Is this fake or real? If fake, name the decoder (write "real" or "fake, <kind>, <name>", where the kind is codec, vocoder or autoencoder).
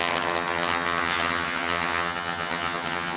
fake, vocoder, HiFi-GAN